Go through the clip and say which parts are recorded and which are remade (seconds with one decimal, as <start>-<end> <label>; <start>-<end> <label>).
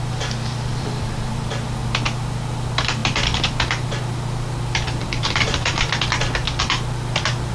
0.0-0.7 recorded; 0.7-1.5 remade; 1.5-5.0 recorded; 5.0-5.9 remade; 5.9-7.5 recorded